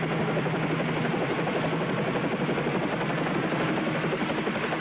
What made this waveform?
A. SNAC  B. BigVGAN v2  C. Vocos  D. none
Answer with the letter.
D